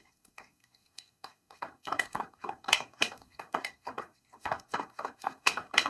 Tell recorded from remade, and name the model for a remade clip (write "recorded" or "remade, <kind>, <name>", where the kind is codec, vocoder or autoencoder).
remade, codec, SNAC